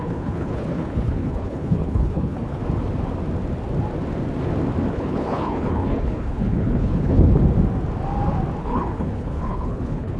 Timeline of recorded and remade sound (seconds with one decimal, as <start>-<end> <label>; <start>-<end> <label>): 0.0-2.6 remade; 2.6-4.9 recorded; 4.9-7.4 remade; 7.4-8.6 recorded; 8.6-10.2 remade

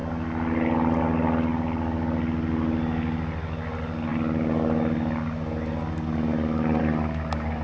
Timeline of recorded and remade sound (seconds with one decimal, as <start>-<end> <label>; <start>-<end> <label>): 0.0-7.6 recorded

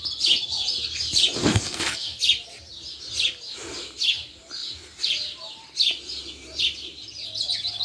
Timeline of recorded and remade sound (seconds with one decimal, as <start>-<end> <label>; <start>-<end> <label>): 0.0-1.4 recorded; 1.4-2.2 remade; 2.2-7.8 recorded

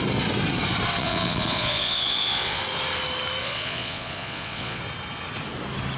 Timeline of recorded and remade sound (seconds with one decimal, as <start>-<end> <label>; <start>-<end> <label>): 0.0-1.0 recorded; 1.0-2.6 remade; 2.6-3.4 recorded; 3.4-4.8 remade; 4.8-6.0 recorded

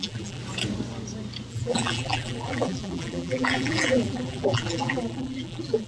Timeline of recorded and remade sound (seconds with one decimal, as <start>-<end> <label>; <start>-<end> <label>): 0.0-0.4 remade; 0.4-1.5 recorded; 1.5-5.9 remade

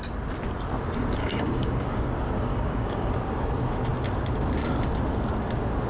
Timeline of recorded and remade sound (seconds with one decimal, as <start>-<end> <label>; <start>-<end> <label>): 0.0-1.2 recorded; 1.2-2.0 remade; 2.0-2.5 recorded; 2.5-3.1 remade; 3.1-5.9 recorded

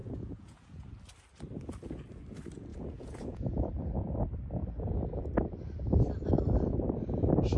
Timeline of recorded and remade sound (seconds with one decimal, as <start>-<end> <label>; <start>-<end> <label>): 0.0-0.9 remade; 0.9-2.7 recorded; 2.7-3.9 remade; 3.9-7.6 recorded